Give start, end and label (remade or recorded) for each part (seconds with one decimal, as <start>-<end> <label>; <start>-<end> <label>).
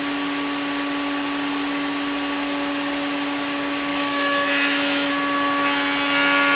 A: 0.0-3.9 recorded; 3.9-5.1 remade; 5.1-6.6 recorded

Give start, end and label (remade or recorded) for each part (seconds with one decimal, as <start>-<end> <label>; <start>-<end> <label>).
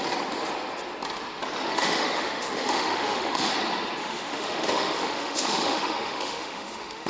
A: 0.0-1.7 recorded; 1.7-3.5 remade; 3.5-4.0 recorded; 4.0-7.1 remade